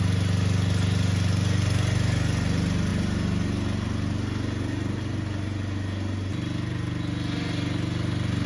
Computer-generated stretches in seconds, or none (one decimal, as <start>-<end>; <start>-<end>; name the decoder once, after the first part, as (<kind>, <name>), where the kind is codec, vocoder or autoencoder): none